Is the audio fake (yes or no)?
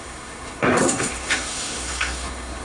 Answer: yes